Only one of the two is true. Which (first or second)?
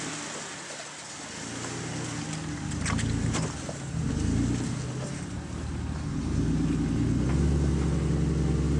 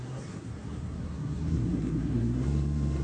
first